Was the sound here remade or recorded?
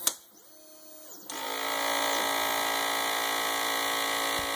recorded